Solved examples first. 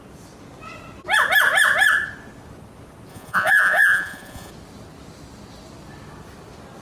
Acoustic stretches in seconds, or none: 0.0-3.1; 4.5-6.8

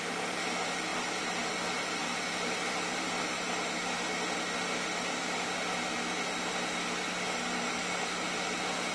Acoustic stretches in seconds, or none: 0.0-0.9; 1.5-2.0; 3.2-8.9

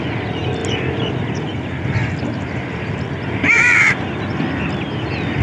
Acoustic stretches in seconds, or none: 0.0-5.4